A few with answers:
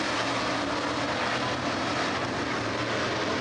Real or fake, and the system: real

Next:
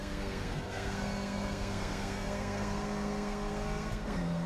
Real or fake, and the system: fake, codec, SNAC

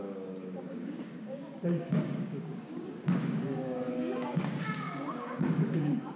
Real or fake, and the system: fake, codec, DAC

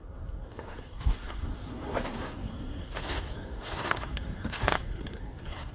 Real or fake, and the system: fake, codec, SNAC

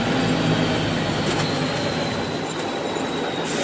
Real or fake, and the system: real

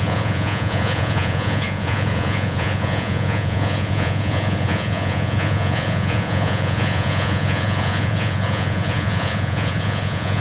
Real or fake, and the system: fake, vocoder, Vocos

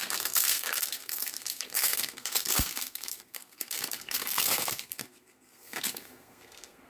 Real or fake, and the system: fake, codec, SNAC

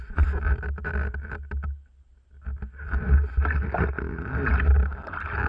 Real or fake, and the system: real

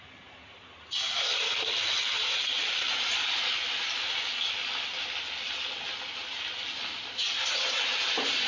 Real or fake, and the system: real